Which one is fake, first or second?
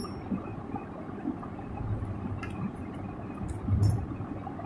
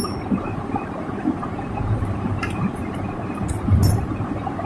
second